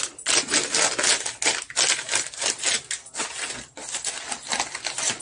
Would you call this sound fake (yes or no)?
no